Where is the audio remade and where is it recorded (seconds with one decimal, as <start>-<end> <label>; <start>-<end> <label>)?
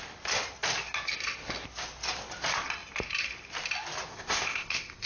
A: 0.0-4.1 recorded; 4.1-5.1 remade